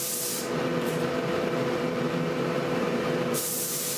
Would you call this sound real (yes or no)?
no